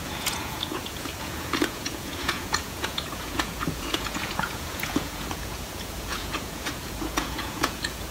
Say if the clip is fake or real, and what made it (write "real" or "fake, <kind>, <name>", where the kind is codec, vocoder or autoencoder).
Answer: fake, vocoder, Vocos